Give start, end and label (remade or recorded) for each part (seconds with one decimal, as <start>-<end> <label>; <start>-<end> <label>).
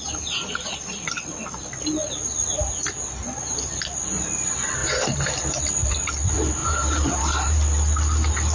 0.0-4.8 recorded; 4.8-5.6 remade; 5.6-6.6 recorded; 6.6-7.6 remade; 7.6-8.5 recorded